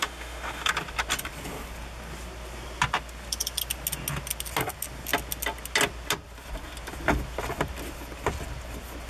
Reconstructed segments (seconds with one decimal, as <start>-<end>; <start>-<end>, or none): 0.0-0.7